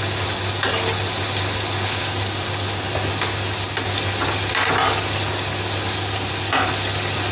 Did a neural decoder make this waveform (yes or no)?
no